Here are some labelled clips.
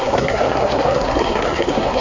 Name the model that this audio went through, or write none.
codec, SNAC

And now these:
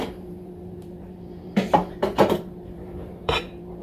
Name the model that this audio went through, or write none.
vocoder, BigVGAN v2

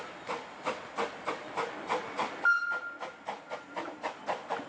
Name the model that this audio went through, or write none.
none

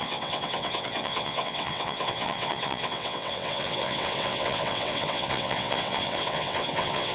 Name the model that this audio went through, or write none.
vocoder, WaveNeXt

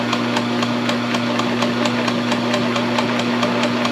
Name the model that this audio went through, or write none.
none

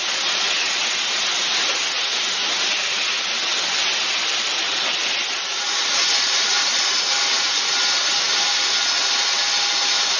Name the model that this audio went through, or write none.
none